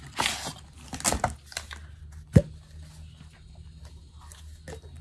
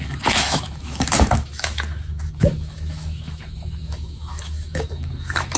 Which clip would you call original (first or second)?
first